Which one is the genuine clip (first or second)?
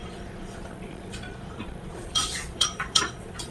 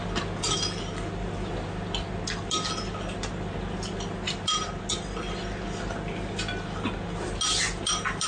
second